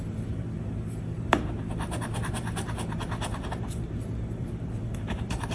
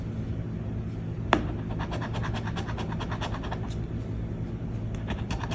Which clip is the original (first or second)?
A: second